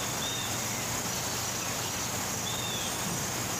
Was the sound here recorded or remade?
recorded